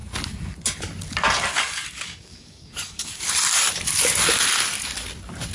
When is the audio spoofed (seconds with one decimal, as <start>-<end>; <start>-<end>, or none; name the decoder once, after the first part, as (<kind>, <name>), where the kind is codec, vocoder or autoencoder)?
1.5-3.2 (codec, DAC)